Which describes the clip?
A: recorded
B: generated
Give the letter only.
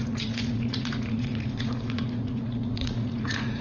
B